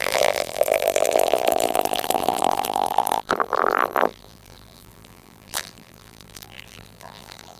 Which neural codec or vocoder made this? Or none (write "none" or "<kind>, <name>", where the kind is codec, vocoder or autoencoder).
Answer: vocoder, BigVGAN v2